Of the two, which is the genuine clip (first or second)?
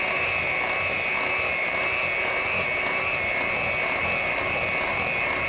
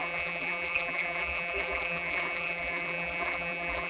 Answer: first